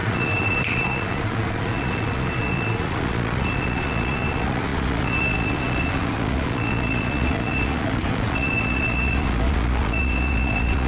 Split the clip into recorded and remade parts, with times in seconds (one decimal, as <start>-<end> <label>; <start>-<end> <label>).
0.0-10.9 remade